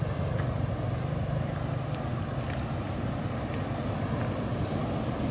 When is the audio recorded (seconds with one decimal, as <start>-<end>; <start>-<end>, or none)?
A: 0.0-5.3